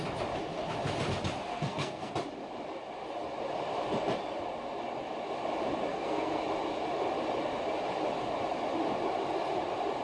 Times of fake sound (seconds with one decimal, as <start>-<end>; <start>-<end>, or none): 1.5-2.1; 5.9-6.4